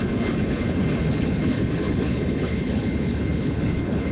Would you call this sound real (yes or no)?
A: no